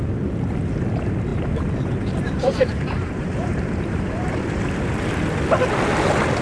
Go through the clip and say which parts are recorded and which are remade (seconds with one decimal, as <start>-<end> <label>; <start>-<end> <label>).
0.0-1.3 recorded; 1.3-4.4 remade; 4.4-6.4 recorded